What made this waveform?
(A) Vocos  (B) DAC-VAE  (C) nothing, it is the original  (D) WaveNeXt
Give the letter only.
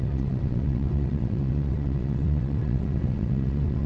D